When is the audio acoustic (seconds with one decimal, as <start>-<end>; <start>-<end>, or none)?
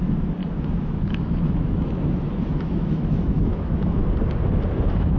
4.0-4.7